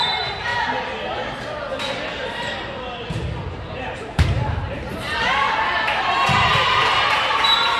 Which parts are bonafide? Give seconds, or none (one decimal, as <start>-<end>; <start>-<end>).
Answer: 0.5-3.6